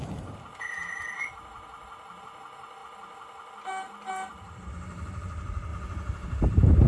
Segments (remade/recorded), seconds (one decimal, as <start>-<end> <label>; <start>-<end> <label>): 0.0-1.3 remade; 1.3-2.2 recorded; 2.2-5.7 remade; 5.7-6.4 recorded; 6.4-6.9 remade